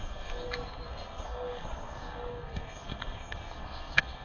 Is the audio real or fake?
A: fake